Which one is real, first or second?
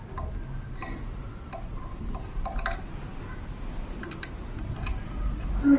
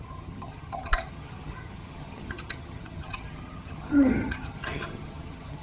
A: first